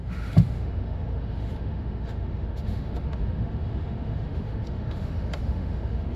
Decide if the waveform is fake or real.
fake